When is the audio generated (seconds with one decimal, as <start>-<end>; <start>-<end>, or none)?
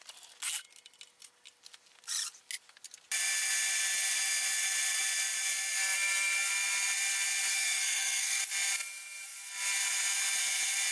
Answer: 7.5-8.4